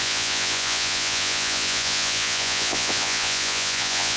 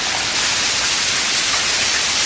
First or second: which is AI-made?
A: first